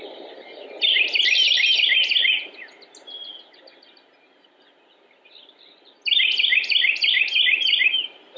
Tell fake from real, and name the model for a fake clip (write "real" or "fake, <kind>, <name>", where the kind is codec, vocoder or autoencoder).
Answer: real